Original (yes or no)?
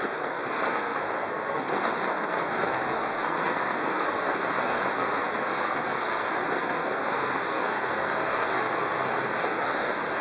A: no